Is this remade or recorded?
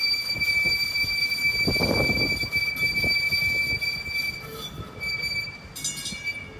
recorded